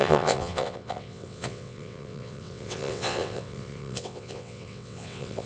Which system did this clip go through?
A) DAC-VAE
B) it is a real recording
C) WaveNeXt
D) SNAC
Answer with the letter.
C